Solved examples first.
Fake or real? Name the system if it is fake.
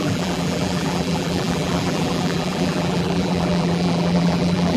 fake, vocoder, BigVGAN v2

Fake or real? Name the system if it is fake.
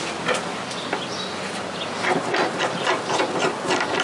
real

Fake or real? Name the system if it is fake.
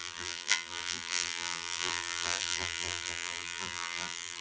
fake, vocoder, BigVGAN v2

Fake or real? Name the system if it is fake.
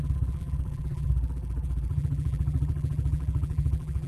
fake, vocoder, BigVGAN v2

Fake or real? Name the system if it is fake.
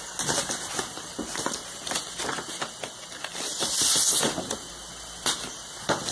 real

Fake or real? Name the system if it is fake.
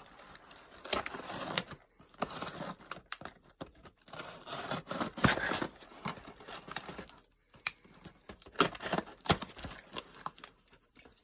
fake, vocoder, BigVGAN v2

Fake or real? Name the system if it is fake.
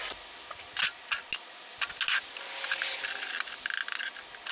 real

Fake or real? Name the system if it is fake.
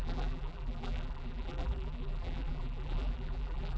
fake, vocoder, BigVGAN v2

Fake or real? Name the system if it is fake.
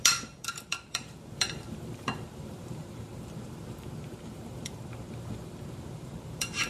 fake, vocoder, BigVGAN v2